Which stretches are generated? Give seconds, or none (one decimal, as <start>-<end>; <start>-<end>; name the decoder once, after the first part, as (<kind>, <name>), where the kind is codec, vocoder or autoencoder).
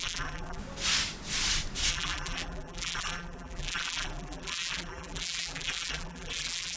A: 0.0-0.6 (vocoder, BigVGAN v2); 1.9-6.8